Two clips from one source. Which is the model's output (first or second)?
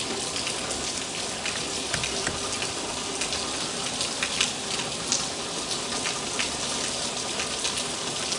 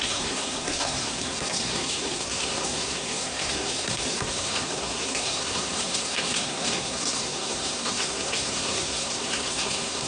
second